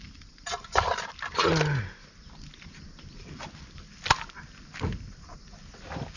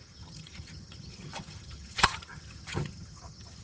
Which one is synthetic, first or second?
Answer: second